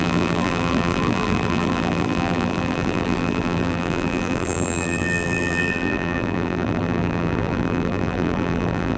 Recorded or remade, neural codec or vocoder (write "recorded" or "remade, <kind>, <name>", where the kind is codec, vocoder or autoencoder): remade, vocoder, BigVGAN v2